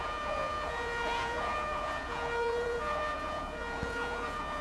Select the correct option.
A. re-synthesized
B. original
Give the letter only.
A